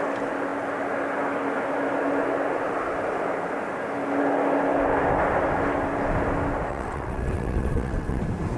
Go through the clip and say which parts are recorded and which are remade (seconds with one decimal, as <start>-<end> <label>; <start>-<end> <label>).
0.0-6.7 recorded; 6.7-8.2 remade; 8.2-8.6 recorded